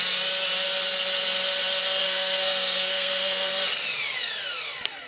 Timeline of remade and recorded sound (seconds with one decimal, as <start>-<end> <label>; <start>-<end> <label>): 0.0-2.0 recorded; 2.0-3.5 remade; 3.5-5.1 recorded